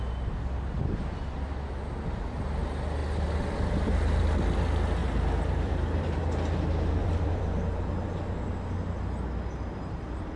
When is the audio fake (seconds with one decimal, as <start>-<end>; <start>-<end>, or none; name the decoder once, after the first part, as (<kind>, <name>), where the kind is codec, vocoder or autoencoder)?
5.0-6.2 (vocoder, BigVGAN v2); 7.0-7.6